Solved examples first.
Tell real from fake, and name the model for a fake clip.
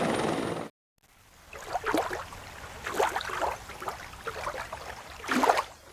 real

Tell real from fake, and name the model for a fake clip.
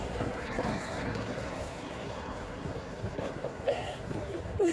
fake, codec, SNAC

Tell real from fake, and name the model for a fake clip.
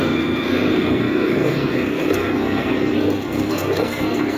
fake, codec, SNAC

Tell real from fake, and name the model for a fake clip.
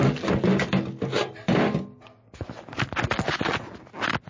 real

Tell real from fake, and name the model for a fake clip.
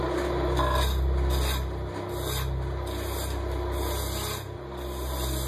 real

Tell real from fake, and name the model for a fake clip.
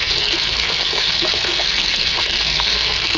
fake, codec, SNAC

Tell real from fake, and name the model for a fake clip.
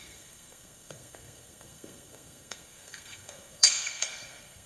fake, codec, SNAC